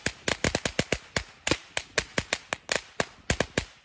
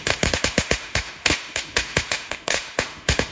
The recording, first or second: first